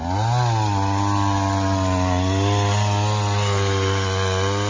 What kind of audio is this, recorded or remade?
recorded